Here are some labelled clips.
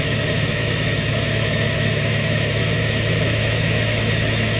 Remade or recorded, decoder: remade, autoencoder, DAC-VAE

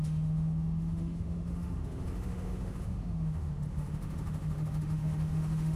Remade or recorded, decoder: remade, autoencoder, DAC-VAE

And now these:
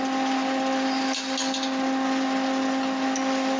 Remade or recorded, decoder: recorded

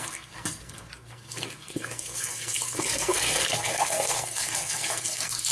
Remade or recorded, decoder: remade, codec, SNAC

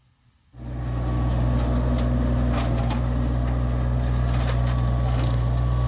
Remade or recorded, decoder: recorded